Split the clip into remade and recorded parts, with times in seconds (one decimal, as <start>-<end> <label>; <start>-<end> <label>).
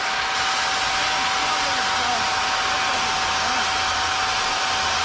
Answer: 0.0-5.0 recorded